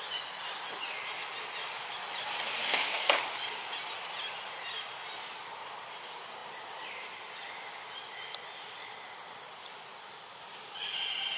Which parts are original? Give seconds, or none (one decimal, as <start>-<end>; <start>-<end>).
0.0-2.6; 3.2-11.4